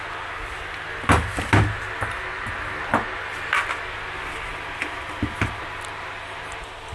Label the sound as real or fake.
real